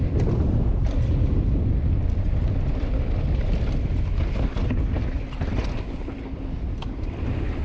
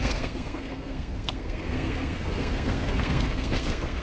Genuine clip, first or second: first